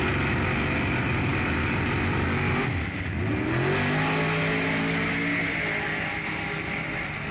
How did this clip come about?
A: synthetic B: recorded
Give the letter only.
B